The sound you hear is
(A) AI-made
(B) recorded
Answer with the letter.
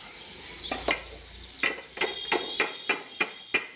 B